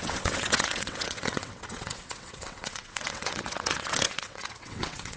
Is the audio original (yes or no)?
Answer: no